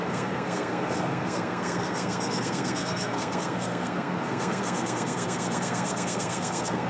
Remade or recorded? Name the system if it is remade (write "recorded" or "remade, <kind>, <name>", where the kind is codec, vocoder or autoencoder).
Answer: remade, codec, SNAC